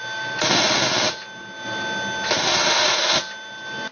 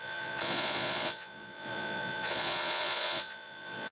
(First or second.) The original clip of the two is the first